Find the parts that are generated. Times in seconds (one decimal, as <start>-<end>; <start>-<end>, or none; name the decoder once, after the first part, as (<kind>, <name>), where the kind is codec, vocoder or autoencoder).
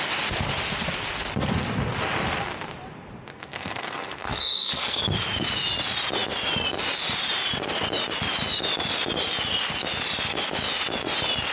3.3-5.0 (codec, SNAC)